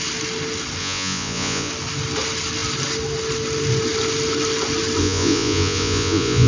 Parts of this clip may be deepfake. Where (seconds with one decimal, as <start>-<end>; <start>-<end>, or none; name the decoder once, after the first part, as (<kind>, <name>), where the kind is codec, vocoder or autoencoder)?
0.8-1.7 (vocoder, Vocos); 5.0-6.5